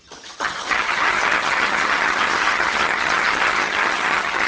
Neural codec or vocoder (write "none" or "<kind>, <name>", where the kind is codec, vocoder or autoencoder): vocoder, HiFi-GAN